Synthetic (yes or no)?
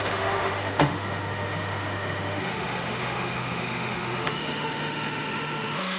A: yes